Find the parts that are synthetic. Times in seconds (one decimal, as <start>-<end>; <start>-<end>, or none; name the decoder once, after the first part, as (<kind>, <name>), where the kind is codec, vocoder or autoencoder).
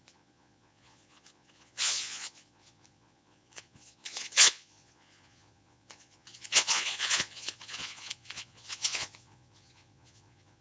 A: 0.0-10.6 (vocoder, Vocos)